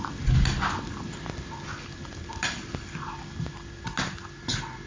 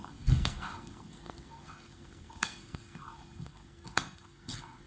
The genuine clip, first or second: first